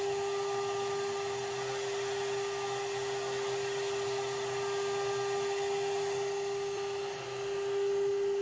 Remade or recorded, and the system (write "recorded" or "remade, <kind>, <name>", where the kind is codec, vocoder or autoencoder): recorded